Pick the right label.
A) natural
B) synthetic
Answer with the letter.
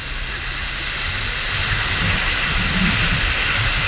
A